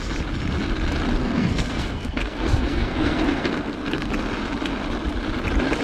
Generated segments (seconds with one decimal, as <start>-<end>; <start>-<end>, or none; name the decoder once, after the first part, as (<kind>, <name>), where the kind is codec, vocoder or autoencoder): 1.2-4.1 (codec, SNAC)